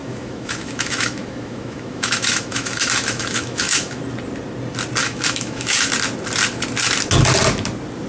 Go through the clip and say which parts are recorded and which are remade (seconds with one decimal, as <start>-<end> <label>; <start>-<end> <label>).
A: 0.0-4.0 remade; 4.0-5.0 recorded; 5.0-5.9 remade; 5.9-8.1 recorded